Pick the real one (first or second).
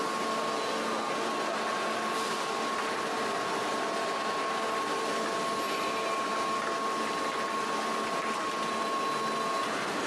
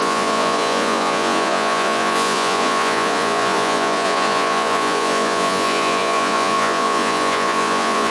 first